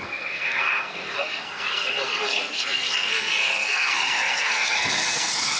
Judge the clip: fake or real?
fake